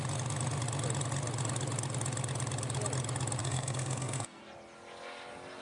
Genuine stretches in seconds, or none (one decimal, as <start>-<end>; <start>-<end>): 0.0-3.4; 4.4-5.6